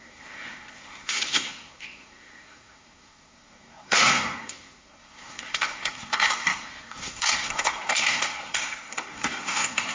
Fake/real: fake